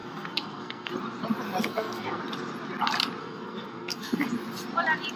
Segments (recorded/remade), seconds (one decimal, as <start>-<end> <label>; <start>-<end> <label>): 0.0-0.9 remade; 0.9-1.6 recorded; 1.6-2.2 remade; 2.2-3.2 recorded; 3.2-4.3 remade; 4.3-5.2 recorded

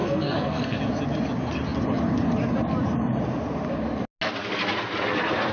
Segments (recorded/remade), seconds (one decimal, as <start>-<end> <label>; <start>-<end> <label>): 0.0-0.8 remade; 0.8-5.5 recorded

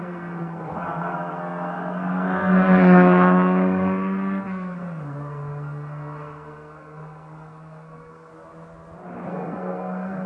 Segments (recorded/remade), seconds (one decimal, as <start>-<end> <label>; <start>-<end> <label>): 0.0-8.3 remade; 8.3-9.3 recorded; 9.3-10.3 remade